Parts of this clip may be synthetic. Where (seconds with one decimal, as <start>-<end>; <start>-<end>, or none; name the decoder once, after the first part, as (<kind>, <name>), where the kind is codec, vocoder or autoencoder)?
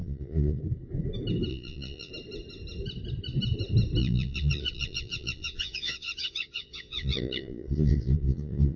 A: 0.0-0.6 (vocoder, Vocos); 1.5-2.1; 4.0-8.8